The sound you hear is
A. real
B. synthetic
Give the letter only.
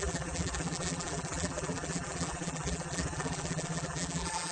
B